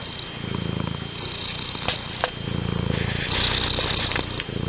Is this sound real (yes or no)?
yes